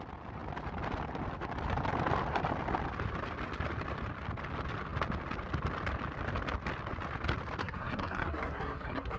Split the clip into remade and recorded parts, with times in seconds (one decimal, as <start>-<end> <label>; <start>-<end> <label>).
0.0-7.6 recorded; 7.6-9.2 remade